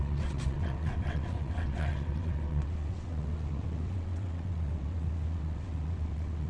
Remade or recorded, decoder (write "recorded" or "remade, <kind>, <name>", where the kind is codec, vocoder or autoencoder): remade, vocoder, WaveNeXt